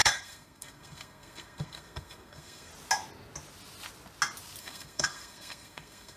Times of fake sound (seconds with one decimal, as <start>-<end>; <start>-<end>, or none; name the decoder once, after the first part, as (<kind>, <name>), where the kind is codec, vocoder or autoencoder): 0.0-2.7 (codec, SNAC); 4.6-6.2